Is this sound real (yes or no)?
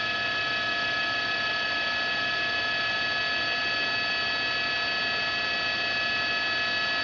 yes